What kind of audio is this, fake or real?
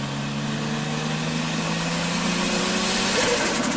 real